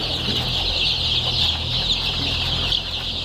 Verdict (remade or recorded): recorded